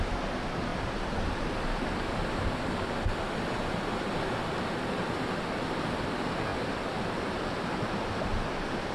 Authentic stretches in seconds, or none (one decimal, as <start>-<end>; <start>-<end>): 0.0-0.7; 1.4-8.9